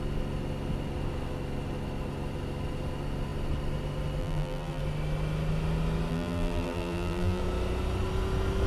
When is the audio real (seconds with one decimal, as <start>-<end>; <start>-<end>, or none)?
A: 0.0-4.2; 4.8-6.1; 7.4-8.7